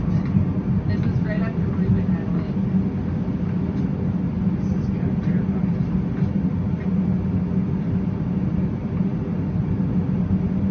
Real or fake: real